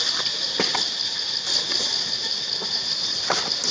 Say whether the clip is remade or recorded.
recorded